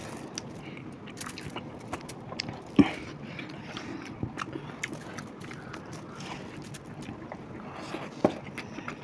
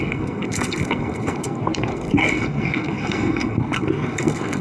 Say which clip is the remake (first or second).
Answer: second